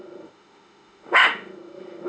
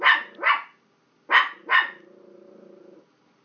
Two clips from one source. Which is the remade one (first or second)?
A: first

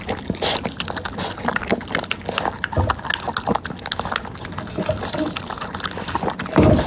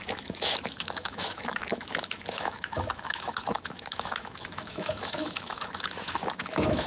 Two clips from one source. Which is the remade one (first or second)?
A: second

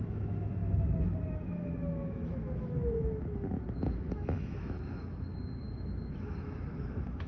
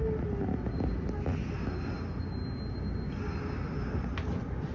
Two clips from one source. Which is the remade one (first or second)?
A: first